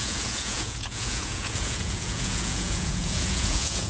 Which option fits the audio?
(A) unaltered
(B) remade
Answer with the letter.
B